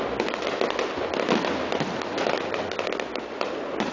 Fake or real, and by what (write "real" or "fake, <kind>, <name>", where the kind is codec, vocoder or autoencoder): real